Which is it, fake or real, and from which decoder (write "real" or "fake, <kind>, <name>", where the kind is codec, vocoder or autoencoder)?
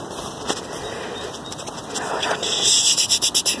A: real